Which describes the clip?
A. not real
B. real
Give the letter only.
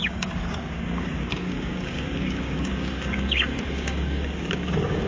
A